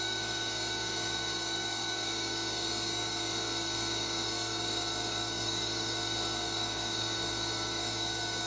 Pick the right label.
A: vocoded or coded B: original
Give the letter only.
A